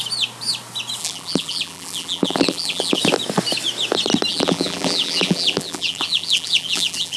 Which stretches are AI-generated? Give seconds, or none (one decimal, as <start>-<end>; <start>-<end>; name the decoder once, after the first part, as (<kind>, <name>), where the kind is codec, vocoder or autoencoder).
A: 1.0-3.0 (vocoder, BigVGAN v2); 4.3-7.2